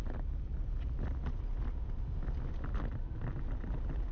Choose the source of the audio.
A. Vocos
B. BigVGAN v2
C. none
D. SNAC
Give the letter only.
C